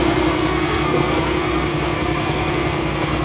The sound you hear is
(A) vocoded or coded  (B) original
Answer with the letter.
A